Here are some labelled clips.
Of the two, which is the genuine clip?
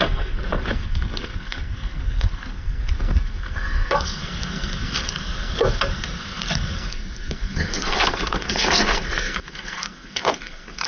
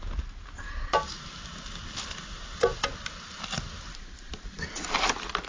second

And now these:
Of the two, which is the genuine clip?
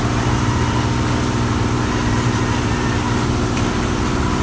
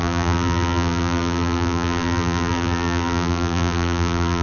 first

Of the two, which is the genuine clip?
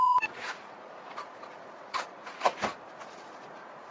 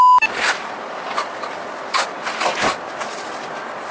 second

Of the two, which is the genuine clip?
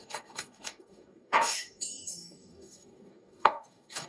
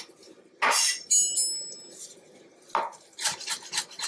second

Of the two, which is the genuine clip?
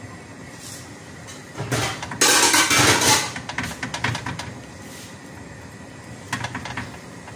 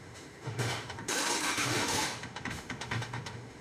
first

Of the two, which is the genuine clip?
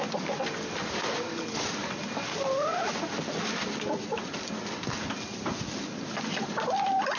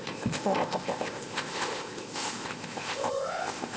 first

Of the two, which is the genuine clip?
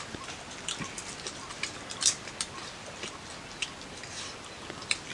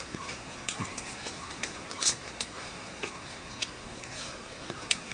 first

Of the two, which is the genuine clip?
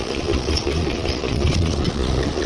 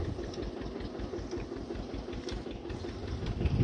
second